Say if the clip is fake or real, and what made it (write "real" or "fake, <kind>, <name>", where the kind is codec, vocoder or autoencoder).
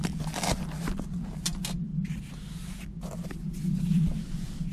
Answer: real